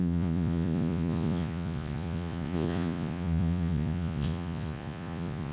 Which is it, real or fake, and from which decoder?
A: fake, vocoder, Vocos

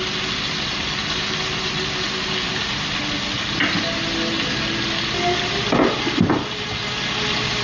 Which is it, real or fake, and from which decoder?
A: real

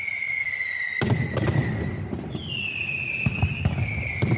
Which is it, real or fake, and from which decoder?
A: real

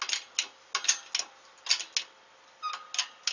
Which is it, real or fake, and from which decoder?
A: real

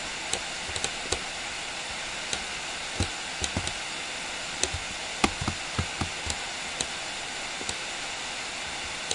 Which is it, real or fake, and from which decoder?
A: real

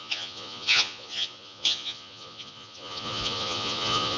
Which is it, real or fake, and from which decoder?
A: fake, vocoder, Vocos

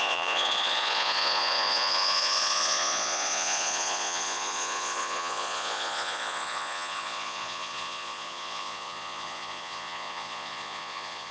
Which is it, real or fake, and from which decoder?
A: fake, vocoder, Vocos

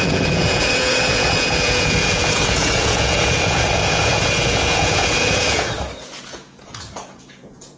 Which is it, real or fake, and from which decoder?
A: fake, vocoder, Vocos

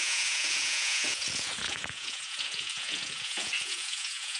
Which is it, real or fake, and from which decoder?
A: fake, vocoder, Vocos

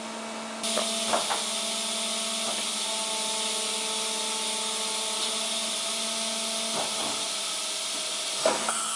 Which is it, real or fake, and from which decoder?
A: real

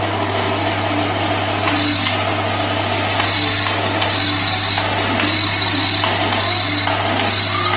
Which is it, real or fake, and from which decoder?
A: real